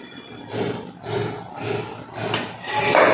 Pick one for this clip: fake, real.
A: real